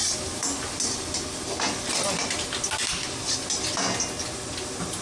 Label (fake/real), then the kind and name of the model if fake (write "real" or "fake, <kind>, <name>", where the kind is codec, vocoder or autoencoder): real